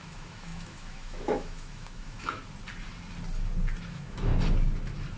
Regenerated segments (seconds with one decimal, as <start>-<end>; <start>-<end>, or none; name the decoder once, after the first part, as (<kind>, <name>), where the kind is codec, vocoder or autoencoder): 0.0-2.4 (autoencoder, DAC-VAE); 3.9-4.3